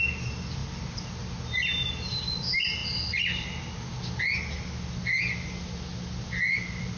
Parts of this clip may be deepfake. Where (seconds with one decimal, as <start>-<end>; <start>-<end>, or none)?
none